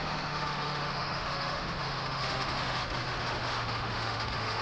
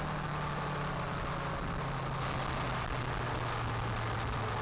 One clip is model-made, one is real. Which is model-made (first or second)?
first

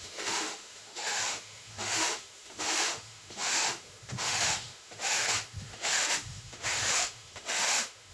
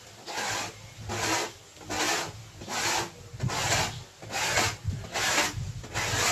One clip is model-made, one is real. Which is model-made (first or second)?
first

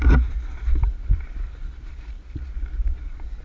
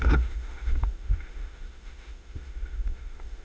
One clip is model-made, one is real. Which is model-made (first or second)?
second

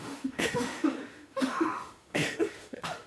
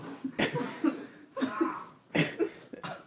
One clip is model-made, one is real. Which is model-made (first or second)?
first